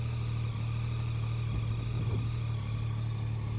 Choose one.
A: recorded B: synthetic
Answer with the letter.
A